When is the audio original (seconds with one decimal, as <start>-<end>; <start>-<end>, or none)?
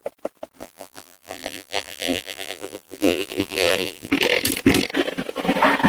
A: 0.0-0.6; 4.1-5.9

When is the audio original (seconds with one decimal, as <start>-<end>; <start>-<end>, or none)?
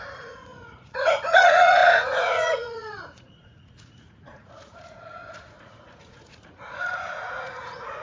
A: none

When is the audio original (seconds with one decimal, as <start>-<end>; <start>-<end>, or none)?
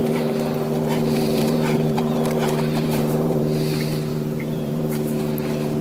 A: 3.4-4.1; 5.2-5.8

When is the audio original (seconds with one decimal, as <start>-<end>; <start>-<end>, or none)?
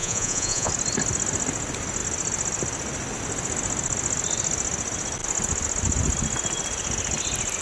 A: 0.7-7.6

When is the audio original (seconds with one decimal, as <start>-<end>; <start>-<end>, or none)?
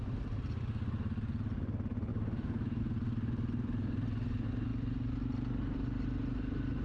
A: 0.0-2.1; 2.8-6.8